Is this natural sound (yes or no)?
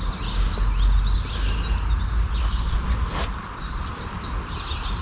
yes